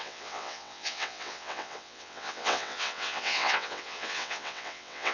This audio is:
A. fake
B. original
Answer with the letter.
A